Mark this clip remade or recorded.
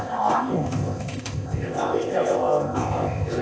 remade